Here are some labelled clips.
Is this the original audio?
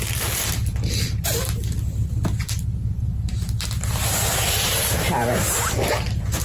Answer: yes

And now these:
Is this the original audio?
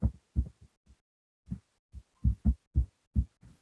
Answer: yes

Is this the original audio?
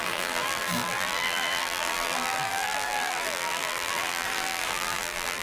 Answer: no